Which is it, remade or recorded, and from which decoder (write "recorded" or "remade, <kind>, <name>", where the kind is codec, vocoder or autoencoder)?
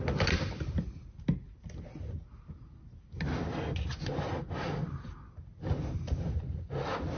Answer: recorded